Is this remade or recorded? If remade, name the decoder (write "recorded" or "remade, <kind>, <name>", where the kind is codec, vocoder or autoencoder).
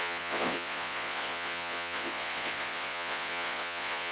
remade, vocoder, Vocos